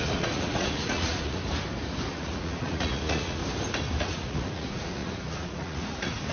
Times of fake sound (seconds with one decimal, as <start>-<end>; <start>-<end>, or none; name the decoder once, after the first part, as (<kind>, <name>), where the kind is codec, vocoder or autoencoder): 0.0-1.4 (vocoder, Vocos); 2.1-3.4; 4.0-6.3